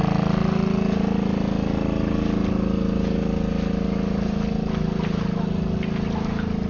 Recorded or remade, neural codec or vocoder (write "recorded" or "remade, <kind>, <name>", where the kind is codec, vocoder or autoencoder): recorded